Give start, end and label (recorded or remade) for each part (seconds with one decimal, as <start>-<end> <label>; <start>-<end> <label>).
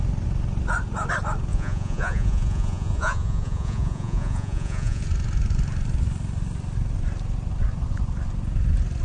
0.0-1.5 recorded; 1.5-5.0 remade; 5.0-9.0 recorded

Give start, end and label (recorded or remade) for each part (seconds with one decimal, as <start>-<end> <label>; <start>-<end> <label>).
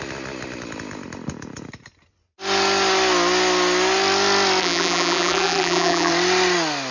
0.0-4.6 recorded; 4.6-6.1 remade; 6.1-6.9 recorded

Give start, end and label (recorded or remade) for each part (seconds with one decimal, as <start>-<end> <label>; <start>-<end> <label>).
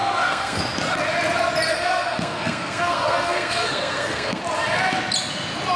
0.0-0.6 remade; 0.6-1.7 recorded; 1.7-4.4 remade; 4.4-5.8 recorded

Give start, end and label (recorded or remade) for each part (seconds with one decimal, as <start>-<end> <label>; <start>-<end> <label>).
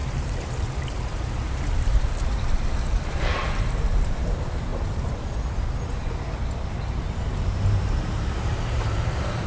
0.0-4.7 remade; 4.7-7.3 recorded; 7.3-9.5 remade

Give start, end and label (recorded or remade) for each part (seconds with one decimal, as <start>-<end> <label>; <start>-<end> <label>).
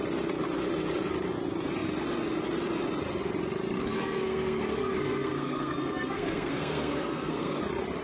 0.0-3.8 recorded; 3.8-7.6 remade; 7.6-8.0 recorded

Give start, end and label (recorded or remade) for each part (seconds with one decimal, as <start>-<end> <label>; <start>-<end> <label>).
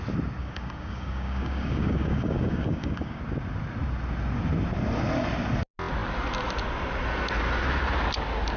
0.0-0.4 recorded; 0.4-3.2 remade; 3.2-8.6 recorded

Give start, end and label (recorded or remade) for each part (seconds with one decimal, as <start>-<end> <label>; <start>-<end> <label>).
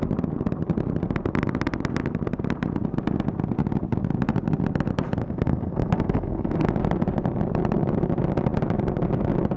0.0-5.2 recorded; 5.2-6.7 remade; 6.7-9.6 recorded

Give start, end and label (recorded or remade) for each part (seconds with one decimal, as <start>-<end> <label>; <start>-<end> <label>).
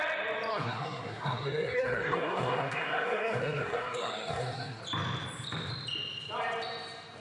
0.0-0.5 recorded; 0.5-4.8 remade; 4.8-7.2 recorded